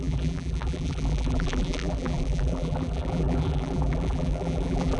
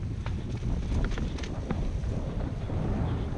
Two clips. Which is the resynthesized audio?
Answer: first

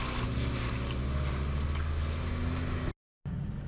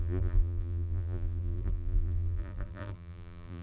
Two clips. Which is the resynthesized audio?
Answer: second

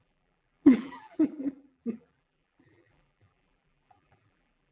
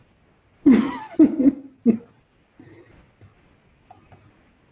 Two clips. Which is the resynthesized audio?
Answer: first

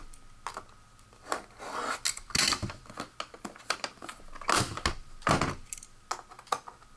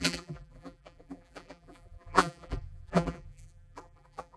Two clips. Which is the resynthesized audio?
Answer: second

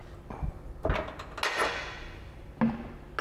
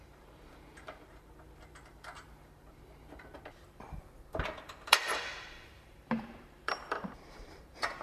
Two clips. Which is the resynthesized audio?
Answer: second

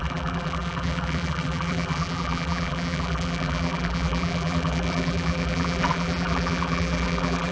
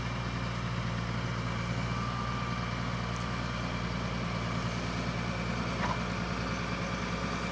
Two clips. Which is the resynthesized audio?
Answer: first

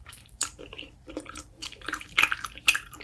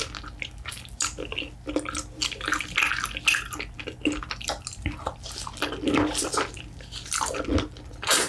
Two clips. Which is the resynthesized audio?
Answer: first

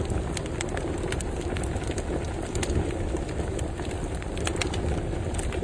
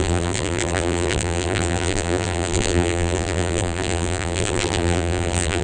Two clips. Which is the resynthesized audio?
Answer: second